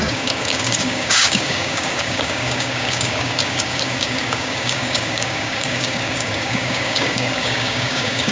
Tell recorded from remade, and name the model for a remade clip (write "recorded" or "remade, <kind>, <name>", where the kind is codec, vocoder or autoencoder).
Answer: remade, codec, DAC